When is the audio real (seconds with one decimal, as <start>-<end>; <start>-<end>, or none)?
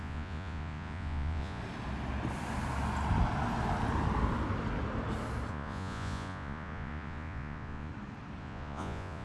1.6-5.5; 7.9-8.4